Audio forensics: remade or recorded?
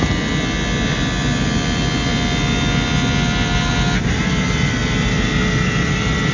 recorded